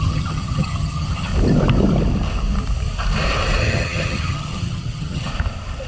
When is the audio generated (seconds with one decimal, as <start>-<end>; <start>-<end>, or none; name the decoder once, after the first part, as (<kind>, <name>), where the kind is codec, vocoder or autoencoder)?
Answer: 0.0-1.3 (vocoder, HiFi-GAN); 3.6-5.3